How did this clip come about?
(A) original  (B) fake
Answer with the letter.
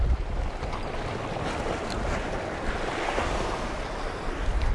A